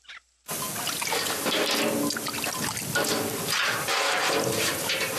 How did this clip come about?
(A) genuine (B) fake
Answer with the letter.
A